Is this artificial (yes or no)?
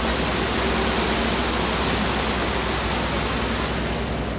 no